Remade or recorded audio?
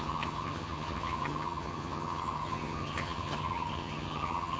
remade